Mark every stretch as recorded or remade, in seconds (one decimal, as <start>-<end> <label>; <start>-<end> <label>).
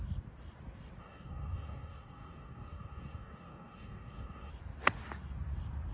0.0-1.0 recorded; 1.0-4.5 remade; 4.5-5.9 recorded